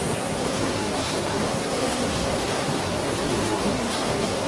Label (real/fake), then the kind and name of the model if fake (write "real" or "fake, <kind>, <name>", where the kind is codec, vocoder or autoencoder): fake, codec, SNAC